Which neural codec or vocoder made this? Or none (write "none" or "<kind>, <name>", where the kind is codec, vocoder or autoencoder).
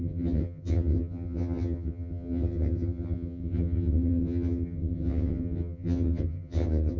vocoder, HiFi-GAN